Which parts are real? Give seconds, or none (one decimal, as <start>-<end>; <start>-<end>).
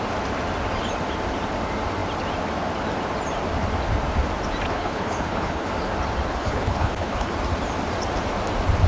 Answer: 0.0-4.7; 5.7-6.3; 7.3-8.9